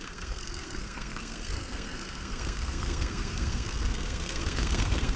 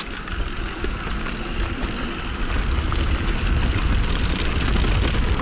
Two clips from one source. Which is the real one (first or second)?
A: second